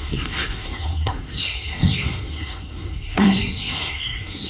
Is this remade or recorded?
remade